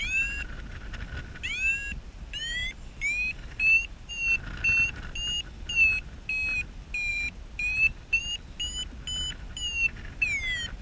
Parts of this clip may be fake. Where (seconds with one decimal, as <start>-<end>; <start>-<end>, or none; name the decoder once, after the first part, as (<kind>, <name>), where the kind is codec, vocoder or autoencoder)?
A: 0.0-0.8 (vocoder, BigVGAN v2); 7.1-8.2